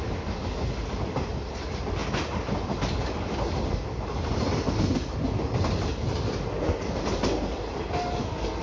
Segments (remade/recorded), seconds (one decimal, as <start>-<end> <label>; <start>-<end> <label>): 0.0-8.6 recorded

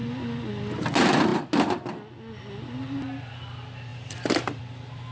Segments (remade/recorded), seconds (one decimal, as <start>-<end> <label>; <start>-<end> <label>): 0.0-3.9 recorded; 3.9-4.6 remade; 4.6-5.1 recorded

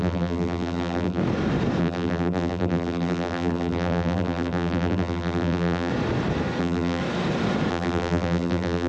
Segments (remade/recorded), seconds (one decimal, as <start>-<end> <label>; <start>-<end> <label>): 0.0-1.2 remade; 1.2-1.8 recorded; 1.8-5.9 remade; 5.9-6.6 recorded; 6.6-7.0 remade; 7.0-7.7 recorded; 7.7-8.9 remade

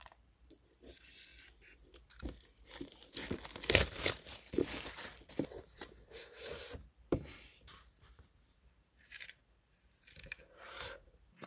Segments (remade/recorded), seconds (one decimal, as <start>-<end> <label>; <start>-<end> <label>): 0.0-1.3 remade; 1.3-4.1 recorded; 4.1-11.5 remade

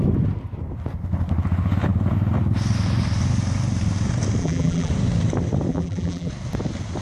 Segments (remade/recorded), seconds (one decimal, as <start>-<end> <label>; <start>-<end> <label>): 0.0-4.4 recorded; 4.4-4.9 remade; 4.9-5.7 recorded; 5.7-6.3 remade; 6.3-7.0 recorded